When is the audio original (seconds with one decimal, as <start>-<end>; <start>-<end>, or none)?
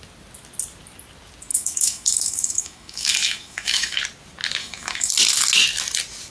0.0-1.5; 4.0-4.6; 5.1-6.3